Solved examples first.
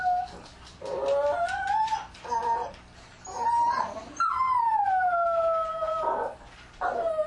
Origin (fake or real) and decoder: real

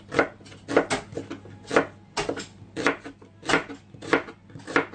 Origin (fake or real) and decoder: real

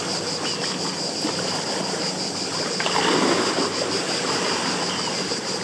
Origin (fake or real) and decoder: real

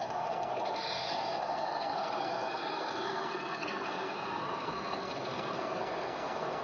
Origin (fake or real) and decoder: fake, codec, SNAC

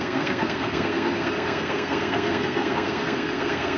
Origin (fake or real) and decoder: fake, codec, SNAC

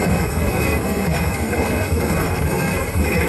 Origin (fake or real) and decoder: fake, codec, SNAC